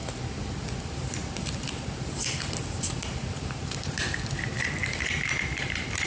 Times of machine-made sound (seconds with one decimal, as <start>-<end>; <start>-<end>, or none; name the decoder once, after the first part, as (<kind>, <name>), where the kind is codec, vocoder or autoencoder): 0.8-4.8 (vocoder, BigVGAN v2)